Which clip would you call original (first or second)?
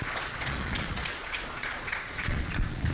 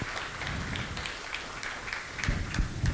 second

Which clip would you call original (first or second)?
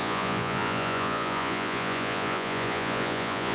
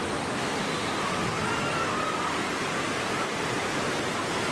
second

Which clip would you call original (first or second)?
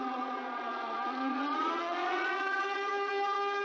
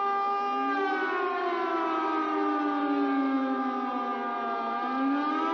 second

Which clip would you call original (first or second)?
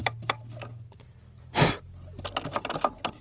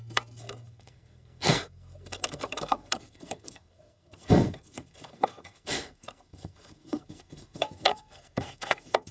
first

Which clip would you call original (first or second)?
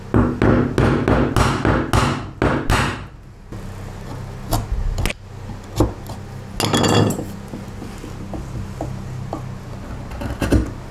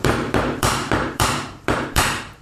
first